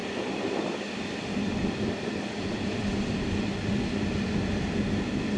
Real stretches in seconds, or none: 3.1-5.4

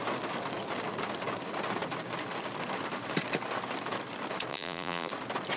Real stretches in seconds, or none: 0.0-4.5; 5.1-5.6

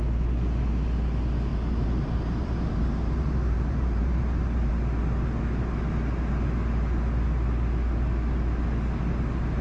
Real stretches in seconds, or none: 0.0-1.5; 4.7-9.6

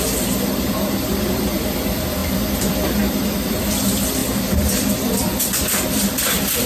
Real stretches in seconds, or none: none

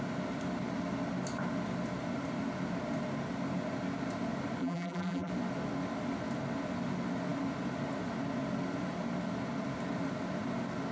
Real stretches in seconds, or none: 0.0-4.6; 5.3-10.9

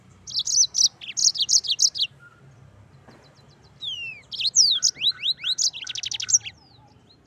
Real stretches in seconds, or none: 0.0-1.2; 1.8-2.3; 4.7-7.3